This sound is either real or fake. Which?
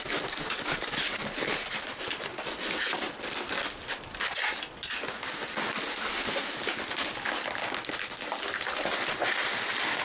real